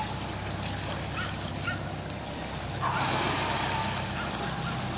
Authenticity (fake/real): real